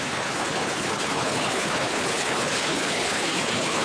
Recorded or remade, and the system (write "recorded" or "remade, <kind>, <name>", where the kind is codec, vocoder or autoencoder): remade, codec, HILCodec